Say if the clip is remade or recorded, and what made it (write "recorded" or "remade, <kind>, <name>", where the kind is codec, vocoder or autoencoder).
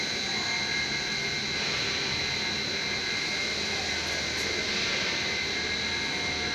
recorded